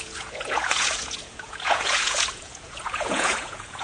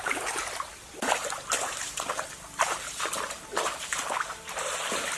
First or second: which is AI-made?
first